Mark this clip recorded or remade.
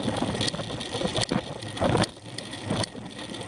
recorded